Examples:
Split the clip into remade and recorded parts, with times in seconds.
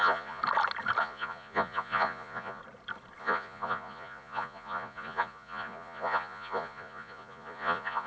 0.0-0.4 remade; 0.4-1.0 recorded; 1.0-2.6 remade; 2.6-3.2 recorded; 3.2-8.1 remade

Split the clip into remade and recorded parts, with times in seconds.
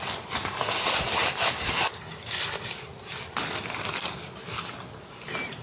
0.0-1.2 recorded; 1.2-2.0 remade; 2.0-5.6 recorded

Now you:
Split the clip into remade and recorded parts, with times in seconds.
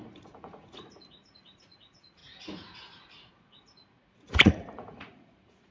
0.0-5.7 remade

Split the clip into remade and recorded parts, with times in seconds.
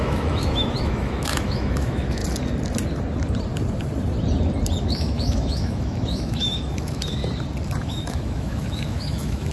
0.0-2.2 remade; 2.2-4.8 recorded; 4.8-7.2 remade; 7.2-7.8 recorded; 7.8-9.5 remade